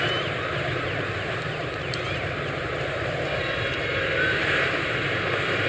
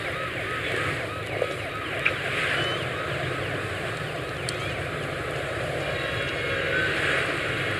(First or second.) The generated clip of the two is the first